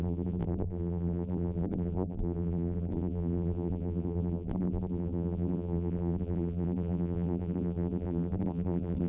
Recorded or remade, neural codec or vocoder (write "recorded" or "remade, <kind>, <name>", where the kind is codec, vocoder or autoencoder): remade, vocoder, BigVGAN v2